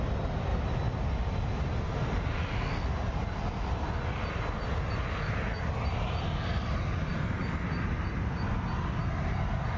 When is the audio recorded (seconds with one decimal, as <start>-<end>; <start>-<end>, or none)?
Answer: 0.0-9.8